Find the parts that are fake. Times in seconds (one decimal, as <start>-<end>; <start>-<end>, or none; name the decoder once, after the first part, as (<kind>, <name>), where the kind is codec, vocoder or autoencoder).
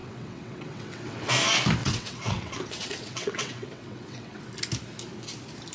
0.0-1.3 (vocoder, WaveNeXt); 1.8-4.4